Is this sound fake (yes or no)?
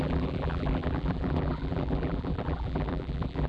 yes